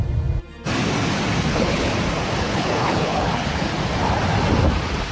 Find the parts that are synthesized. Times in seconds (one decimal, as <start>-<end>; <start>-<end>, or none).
1.5-1.9; 2.4-3.7